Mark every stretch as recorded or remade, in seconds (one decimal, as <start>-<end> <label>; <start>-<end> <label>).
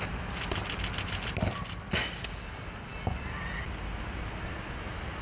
0.0-5.2 recorded